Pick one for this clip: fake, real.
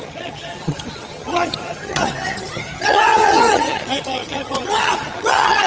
fake